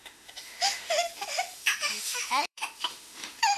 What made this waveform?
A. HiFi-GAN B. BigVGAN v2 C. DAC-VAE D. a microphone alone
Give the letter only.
C